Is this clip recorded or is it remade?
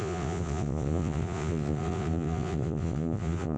remade